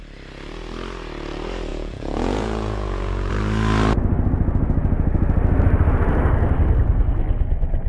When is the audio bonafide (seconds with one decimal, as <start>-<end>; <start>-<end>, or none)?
0.0-1.7; 3.3-7.9